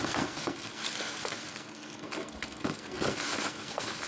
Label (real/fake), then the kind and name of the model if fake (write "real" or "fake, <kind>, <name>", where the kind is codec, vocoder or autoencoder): fake, codec, SNAC